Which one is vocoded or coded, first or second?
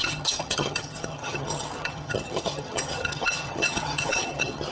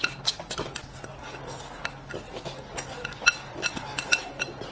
first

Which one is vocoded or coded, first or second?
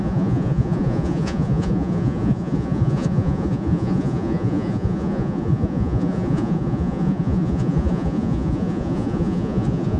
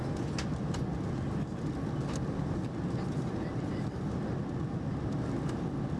first